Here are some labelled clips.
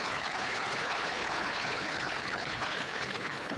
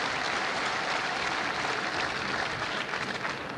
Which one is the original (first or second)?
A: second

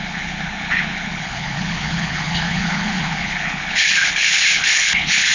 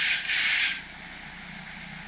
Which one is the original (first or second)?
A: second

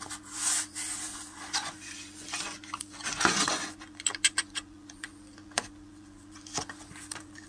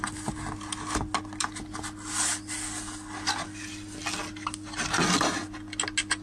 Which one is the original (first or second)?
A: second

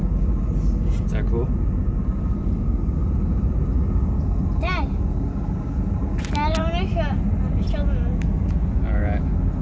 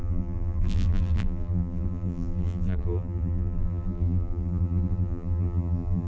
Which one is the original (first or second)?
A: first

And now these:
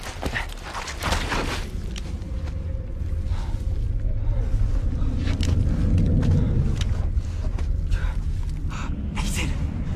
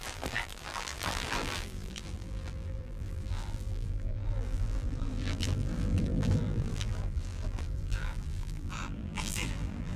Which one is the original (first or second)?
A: first